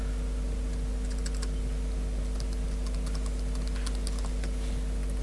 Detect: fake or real real